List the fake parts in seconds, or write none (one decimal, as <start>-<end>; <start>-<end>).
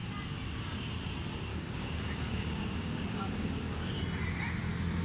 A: 1.5-4.0